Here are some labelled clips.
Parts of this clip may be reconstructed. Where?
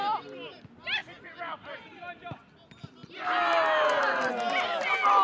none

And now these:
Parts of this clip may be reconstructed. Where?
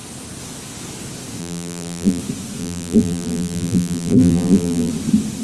1.4-2.2 (vocoder, BigVGAN v2); 2.6-4.9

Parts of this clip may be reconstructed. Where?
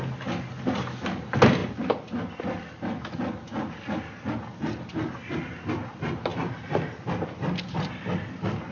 1.6-2.4 (vocoder, BigVGAN v2); 6.3-7.9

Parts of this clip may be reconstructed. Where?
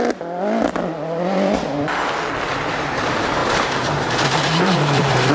3.4-5.3 (vocoder, BigVGAN v2)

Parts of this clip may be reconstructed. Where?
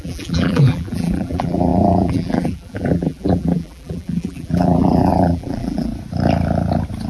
0.0-5.9 (vocoder, BigVGAN v2)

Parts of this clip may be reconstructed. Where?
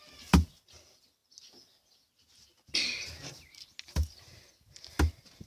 none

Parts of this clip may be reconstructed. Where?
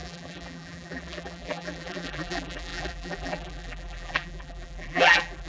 0.0-5.5 (vocoder, BigVGAN v2)